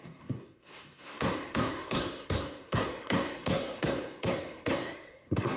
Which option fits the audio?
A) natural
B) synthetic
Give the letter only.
B